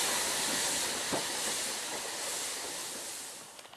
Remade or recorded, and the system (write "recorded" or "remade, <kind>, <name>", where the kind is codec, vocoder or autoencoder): recorded